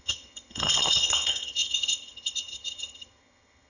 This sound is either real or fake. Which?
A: fake